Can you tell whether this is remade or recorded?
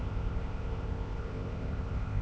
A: remade